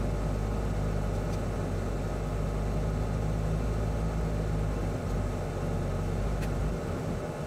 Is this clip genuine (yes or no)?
yes